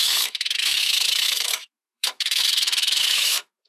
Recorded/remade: remade